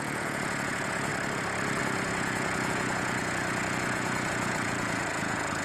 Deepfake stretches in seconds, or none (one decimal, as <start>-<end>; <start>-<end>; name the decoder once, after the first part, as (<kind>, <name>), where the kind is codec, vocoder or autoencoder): 0.0-1.1 (vocoder, Vocos); 1.8-5.6